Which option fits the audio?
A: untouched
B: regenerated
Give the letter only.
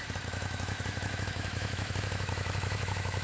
B